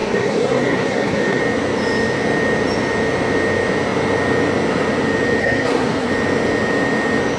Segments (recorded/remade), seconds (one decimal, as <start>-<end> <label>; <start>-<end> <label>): 0.0-1.4 remade; 1.4-5.4 recorded; 5.4-6.1 remade; 6.1-7.4 recorded